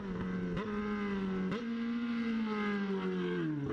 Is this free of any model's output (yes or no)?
yes